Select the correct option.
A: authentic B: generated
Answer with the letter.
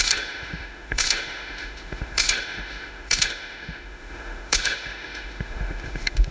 B